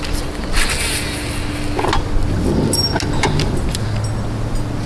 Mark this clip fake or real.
real